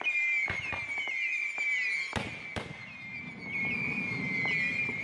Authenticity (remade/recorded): recorded